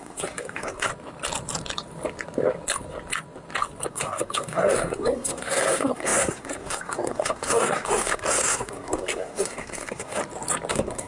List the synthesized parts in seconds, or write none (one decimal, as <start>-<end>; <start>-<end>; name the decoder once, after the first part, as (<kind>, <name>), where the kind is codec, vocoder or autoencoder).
0.0-0.9 (codec, SNAC); 3.9-10.2; 10.7-11.1